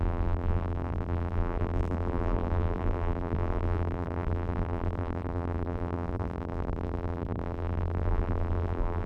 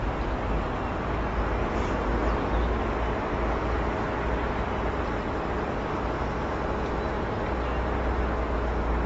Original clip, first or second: second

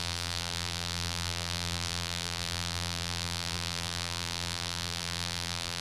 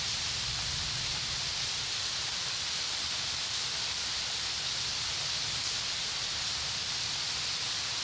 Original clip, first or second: second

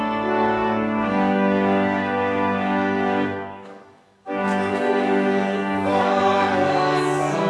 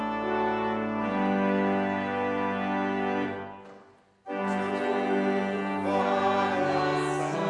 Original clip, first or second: second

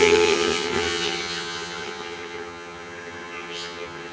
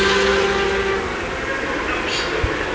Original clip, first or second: second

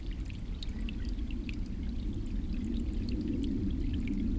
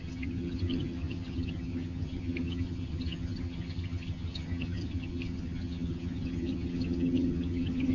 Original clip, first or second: first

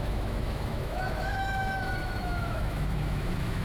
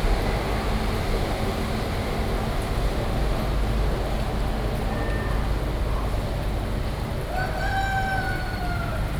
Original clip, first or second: second